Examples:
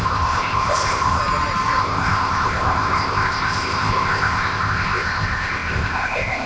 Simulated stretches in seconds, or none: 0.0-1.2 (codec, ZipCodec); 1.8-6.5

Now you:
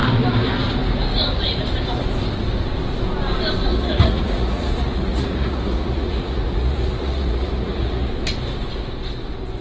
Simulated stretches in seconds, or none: 3.7-8.1 (vocoder, Vocos)

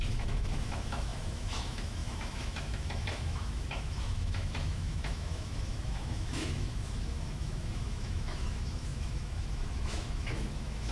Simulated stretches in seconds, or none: 0.0-10.9 (autoencoder, DAC-VAE)

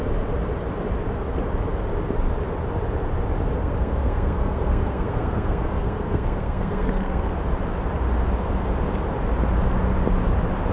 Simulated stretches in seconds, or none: 3.6-7.3 (codec, SNAC)

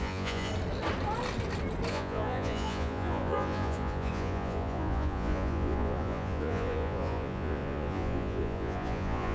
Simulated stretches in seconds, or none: 0.0-0.5 (vocoder, Vocos); 1.9-9.3

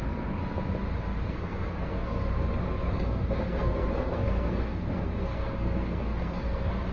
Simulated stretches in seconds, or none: 0.0-0.4 (codec, SNAC); 1.2-2.2; 2.9-6.9

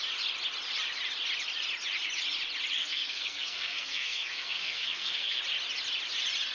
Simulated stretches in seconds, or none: 2.8-5.4 (codec, SNAC)